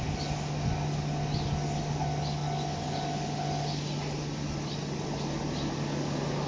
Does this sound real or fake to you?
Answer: real